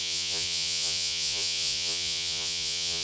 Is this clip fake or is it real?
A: fake